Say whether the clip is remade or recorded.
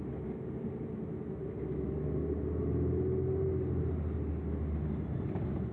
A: recorded